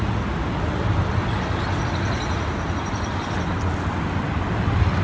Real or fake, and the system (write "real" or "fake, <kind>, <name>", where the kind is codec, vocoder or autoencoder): real